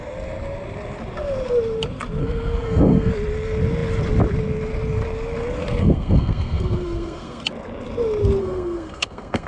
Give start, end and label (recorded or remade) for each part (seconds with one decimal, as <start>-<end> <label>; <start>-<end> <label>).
0.0-2.2 recorded; 2.2-3.1 remade; 3.1-5.8 recorded; 5.8-7.4 remade; 7.4-8.4 recorded; 8.4-9.5 remade